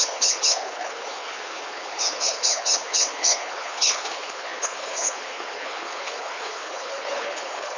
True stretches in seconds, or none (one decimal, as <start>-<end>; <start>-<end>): none